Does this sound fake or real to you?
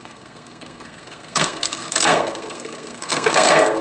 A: fake